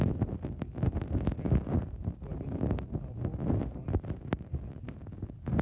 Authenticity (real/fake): real